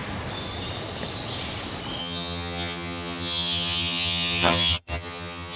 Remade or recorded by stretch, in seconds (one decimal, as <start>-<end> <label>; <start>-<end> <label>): 0.0-2.0 recorded; 2.0-5.6 remade